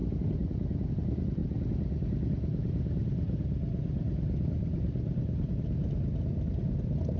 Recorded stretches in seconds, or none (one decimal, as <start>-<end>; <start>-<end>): 0.0-7.2